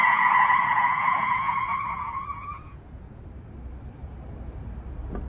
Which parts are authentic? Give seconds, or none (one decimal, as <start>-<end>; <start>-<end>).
3.2-5.3